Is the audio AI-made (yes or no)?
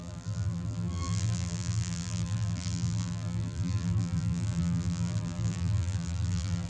yes